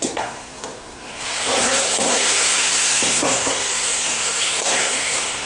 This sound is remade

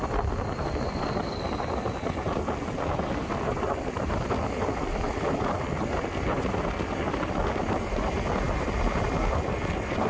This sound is recorded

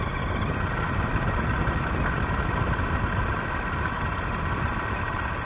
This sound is recorded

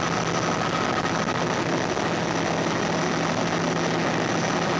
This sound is recorded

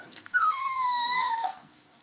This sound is remade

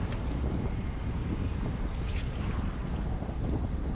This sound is recorded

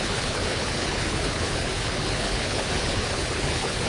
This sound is remade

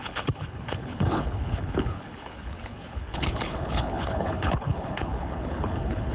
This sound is remade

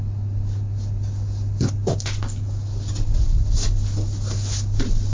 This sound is recorded